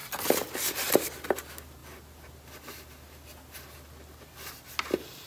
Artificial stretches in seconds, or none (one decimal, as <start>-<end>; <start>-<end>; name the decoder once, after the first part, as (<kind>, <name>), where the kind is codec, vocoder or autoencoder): none